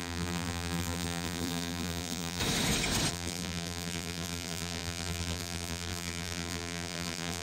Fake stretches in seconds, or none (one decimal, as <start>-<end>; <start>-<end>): 0.0-2.4; 3.1-7.4